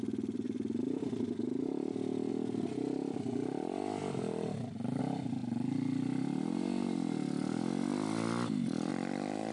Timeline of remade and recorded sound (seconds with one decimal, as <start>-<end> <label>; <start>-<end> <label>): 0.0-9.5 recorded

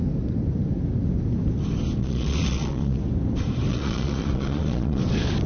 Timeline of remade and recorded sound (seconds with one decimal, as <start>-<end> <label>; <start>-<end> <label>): 0.0-2.0 recorded; 2.0-3.0 remade; 3.0-3.7 recorded; 3.7-5.0 remade; 5.0-5.5 recorded

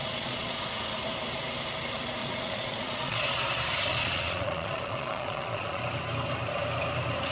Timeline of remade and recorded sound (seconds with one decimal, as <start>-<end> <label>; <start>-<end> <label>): 0.0-0.6 remade; 0.6-2.2 recorded; 2.2-3.3 remade; 3.3-3.9 recorded; 3.9-5.8 remade; 5.8-7.3 recorded